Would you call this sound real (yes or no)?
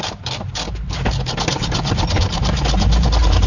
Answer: no